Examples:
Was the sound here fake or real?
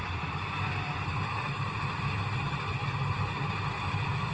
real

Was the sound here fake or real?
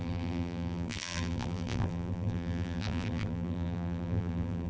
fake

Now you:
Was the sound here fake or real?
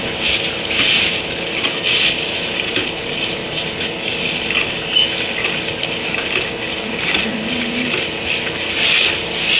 real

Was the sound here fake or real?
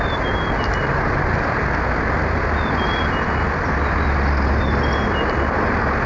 real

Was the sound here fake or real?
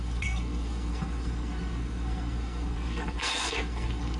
fake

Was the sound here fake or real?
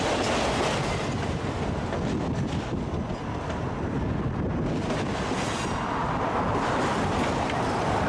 real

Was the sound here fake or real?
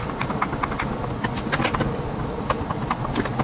real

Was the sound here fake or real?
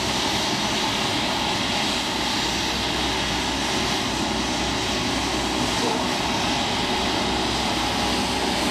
real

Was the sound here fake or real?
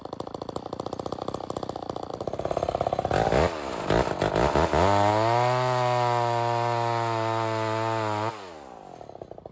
real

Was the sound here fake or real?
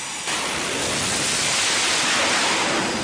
real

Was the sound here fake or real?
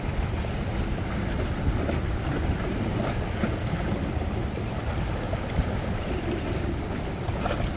real